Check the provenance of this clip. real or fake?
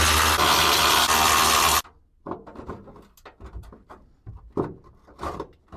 real